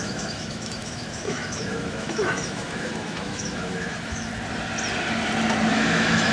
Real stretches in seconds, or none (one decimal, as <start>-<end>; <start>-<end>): 4.3-5.7